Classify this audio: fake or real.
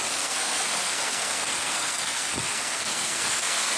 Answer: fake